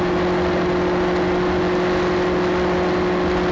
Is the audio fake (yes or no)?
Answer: no